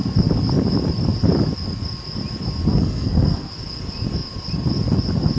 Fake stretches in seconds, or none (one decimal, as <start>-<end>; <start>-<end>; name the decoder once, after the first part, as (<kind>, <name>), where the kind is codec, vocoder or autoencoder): 2.7-3.5 (codec, SNAC)